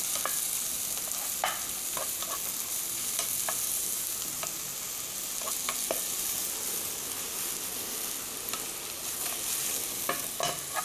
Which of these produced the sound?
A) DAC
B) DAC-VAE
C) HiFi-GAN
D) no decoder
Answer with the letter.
D